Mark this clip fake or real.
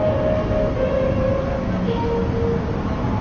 real